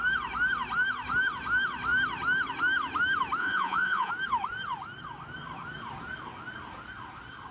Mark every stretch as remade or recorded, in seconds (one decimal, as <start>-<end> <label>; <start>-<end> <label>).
0.0-3.4 recorded; 3.4-4.1 remade; 4.1-7.5 recorded